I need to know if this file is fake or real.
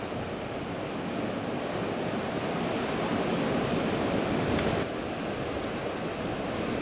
real